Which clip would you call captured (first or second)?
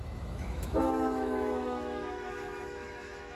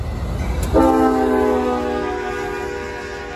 second